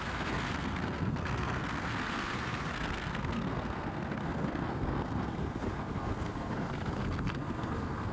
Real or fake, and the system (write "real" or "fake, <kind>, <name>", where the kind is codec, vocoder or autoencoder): fake, codec, SNAC